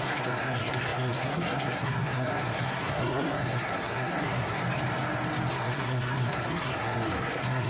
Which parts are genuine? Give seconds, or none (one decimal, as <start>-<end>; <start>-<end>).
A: 4.6-5.5